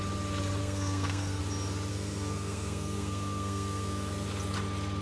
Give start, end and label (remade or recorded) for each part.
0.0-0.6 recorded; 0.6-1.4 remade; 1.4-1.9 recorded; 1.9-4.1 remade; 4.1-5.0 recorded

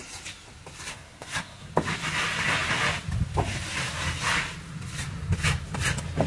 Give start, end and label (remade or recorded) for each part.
0.0-0.9 recorded; 0.9-1.7 remade; 1.7-6.3 recorded

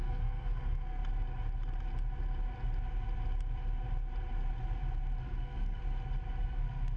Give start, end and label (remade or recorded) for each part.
0.0-1.0 remade; 1.0-5.2 recorded; 5.2-5.8 remade; 5.8-6.4 recorded; 6.4-7.0 remade